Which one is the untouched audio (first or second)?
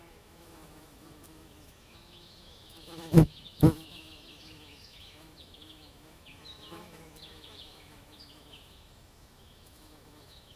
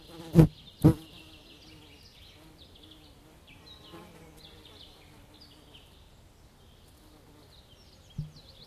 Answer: second